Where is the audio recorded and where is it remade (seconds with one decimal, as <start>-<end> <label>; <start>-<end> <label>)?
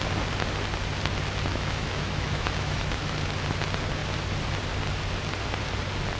0.0-1.5 recorded; 1.5-3.0 remade; 3.0-6.2 recorded